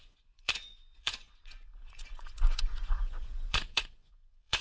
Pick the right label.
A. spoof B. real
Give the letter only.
A